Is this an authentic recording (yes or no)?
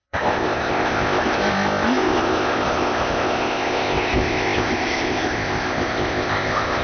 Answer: no